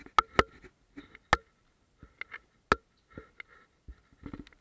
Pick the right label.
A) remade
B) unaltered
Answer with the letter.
B